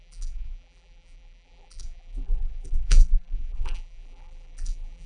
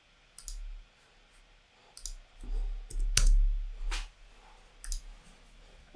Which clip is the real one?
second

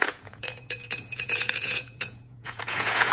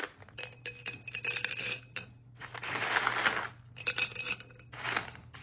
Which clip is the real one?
second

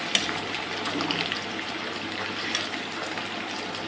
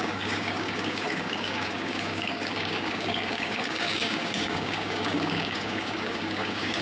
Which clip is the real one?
first